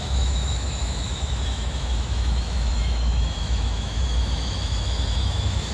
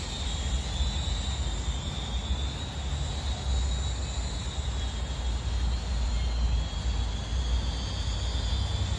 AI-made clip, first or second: first